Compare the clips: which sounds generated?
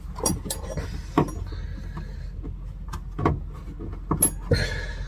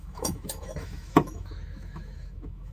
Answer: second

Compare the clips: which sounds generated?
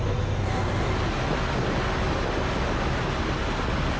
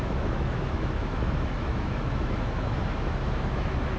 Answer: second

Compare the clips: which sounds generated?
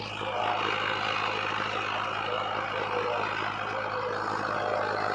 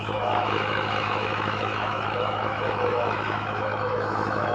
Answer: second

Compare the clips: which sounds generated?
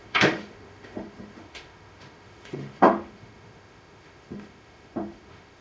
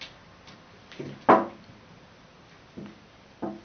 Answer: first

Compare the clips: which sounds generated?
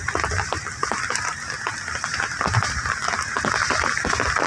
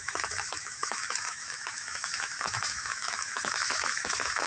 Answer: second